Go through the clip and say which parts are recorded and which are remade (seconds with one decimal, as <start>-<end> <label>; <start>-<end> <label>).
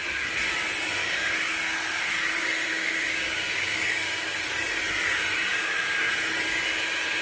0.0-1.0 recorded; 1.0-4.4 remade; 4.4-5.5 recorded; 5.5-6.1 remade; 6.1-7.2 recorded